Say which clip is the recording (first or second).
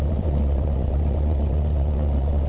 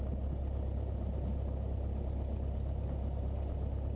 second